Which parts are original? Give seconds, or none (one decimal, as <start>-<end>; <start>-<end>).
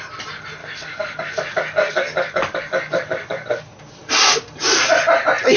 0.0-0.6; 3.6-5.6